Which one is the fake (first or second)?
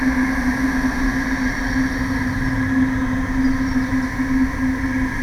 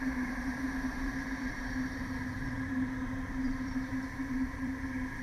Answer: second